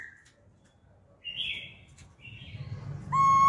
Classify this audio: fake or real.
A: real